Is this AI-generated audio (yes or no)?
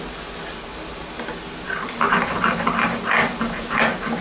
no